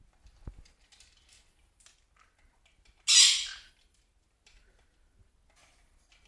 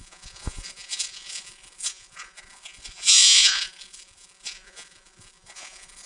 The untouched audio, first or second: first